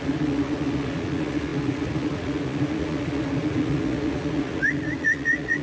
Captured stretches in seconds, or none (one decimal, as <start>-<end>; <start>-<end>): none